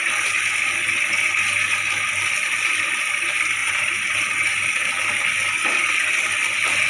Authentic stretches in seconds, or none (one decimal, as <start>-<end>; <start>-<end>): 0.0-3.6; 4.9-6.9